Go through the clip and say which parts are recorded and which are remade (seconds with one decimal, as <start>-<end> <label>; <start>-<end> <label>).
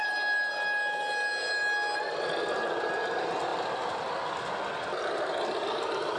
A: 0.0-6.2 recorded